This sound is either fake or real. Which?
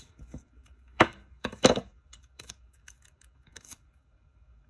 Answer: fake